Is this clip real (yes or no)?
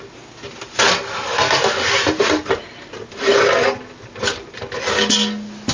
yes